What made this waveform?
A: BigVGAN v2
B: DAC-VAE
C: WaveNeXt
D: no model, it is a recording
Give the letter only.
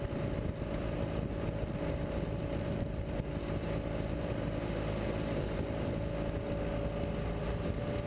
D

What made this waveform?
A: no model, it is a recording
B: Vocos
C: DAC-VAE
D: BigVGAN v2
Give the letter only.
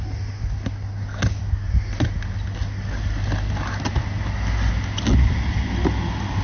A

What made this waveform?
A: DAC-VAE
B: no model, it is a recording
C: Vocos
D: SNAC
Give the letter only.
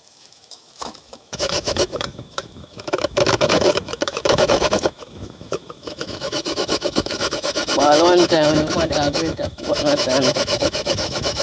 A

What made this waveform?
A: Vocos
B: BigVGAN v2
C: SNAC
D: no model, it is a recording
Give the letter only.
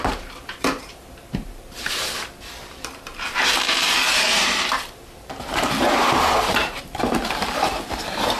B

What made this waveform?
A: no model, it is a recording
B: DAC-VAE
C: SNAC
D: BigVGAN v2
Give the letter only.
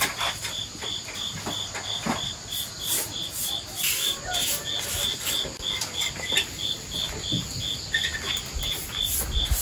A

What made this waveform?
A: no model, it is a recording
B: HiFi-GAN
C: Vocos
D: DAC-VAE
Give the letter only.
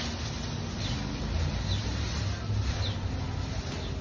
A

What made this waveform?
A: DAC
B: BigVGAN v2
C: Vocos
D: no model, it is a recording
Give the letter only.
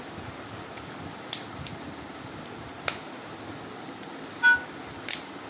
D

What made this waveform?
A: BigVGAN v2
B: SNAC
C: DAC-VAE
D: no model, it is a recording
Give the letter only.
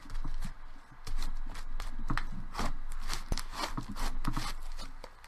D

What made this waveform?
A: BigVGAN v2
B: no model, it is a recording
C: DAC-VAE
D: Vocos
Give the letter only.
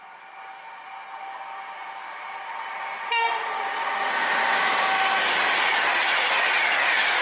B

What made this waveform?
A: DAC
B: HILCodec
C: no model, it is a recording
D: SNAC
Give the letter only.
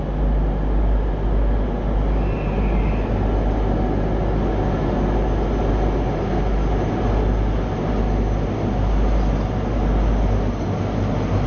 C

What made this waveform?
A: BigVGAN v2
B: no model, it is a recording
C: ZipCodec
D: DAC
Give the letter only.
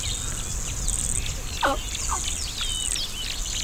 B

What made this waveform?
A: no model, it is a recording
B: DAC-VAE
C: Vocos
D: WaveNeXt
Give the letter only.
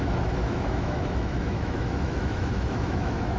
B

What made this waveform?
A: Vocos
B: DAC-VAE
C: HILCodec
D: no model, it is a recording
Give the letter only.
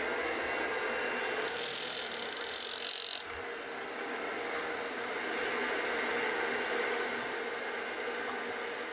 D